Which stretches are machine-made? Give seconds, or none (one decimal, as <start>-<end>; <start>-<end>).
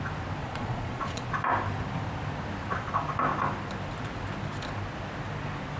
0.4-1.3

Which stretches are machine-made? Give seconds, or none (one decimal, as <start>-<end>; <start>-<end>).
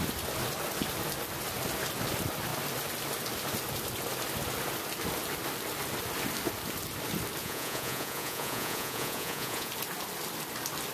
7.4-9.7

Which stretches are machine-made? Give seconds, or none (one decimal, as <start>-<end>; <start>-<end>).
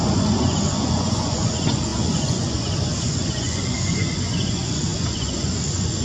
0.0-6.0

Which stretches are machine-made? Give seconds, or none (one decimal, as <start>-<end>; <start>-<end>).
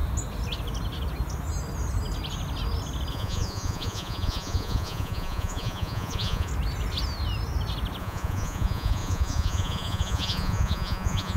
3.1-6.5; 8.0-11.4